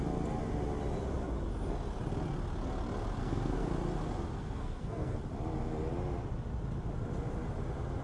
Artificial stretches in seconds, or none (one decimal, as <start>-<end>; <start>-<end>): 3.2-3.7; 4.3-5.2